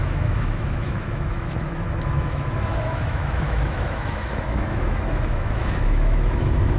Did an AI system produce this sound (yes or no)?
yes